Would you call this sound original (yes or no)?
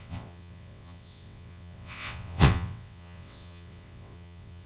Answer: no